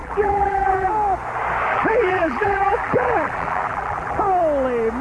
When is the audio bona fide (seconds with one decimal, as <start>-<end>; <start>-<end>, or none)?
0.9-1.7; 4.2-5.0